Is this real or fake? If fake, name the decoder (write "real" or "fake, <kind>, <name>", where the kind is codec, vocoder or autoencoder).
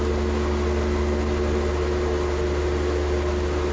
real